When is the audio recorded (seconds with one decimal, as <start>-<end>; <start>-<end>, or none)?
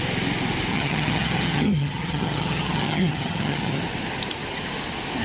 0.0-0.7; 3.8-5.2